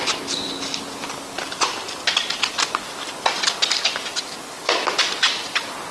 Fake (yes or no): no